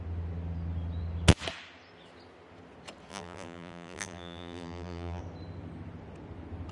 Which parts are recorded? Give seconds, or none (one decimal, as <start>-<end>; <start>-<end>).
0.0-3.1; 5.2-6.7